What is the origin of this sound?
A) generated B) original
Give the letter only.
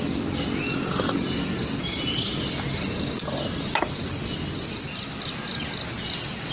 B